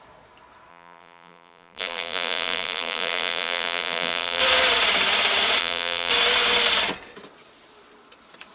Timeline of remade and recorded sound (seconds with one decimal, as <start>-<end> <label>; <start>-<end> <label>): 0.0-0.7 recorded; 0.7-4.4 remade; 4.4-5.6 recorded; 5.6-6.1 remade; 6.1-8.5 recorded